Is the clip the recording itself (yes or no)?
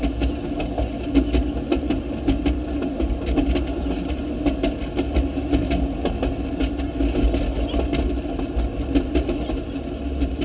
yes